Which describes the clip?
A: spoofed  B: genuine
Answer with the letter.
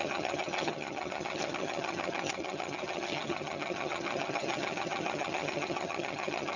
A